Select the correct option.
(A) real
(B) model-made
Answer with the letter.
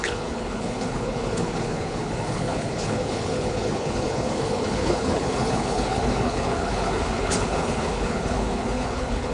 B